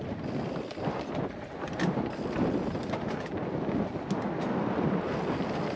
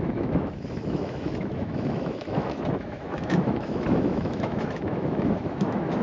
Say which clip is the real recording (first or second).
first